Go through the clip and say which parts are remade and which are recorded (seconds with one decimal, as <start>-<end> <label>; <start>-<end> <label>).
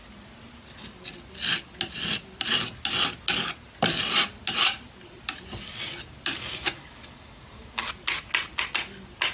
0.0-6.3 recorded; 6.3-7.9 remade; 7.9-9.3 recorded